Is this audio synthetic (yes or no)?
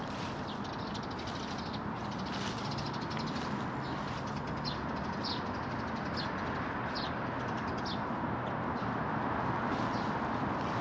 no